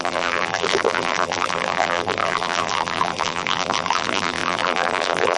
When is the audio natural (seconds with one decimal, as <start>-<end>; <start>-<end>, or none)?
none